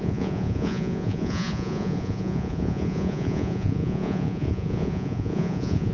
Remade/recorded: remade